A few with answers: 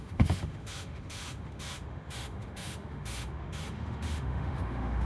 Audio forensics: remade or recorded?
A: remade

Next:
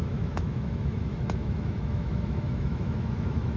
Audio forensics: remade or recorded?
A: remade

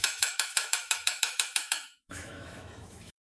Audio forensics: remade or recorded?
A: remade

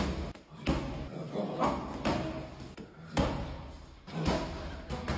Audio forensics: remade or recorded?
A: recorded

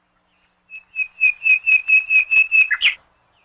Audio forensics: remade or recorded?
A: recorded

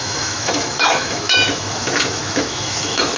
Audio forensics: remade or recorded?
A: remade